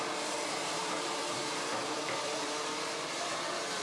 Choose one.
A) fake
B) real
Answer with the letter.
A